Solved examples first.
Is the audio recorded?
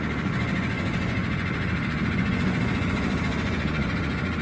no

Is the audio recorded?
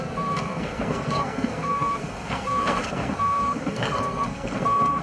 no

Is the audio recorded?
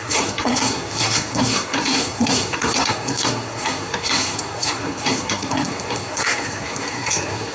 no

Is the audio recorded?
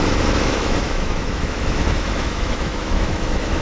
no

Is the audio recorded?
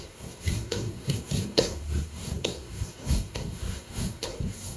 no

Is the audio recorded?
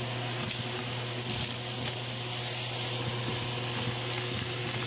yes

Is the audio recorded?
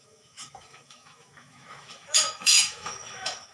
no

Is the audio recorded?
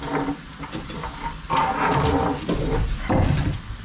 yes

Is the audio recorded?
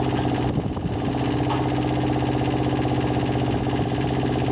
yes